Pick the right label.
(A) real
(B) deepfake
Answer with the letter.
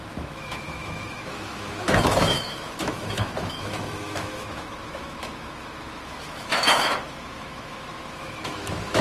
B